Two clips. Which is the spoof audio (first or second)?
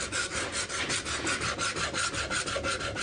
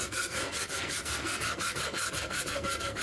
second